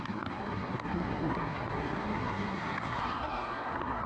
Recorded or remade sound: remade